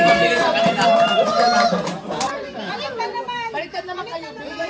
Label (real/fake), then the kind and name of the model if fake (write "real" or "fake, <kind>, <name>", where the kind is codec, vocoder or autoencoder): fake, vocoder, BigVGAN v2